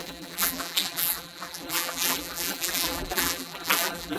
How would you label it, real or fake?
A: fake